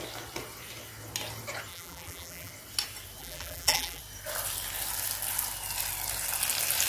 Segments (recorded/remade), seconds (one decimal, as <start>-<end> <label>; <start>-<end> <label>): 0.0-1.7 recorded; 1.7-2.5 remade; 2.5-3.2 recorded; 3.2-4.0 remade; 4.0-6.9 recorded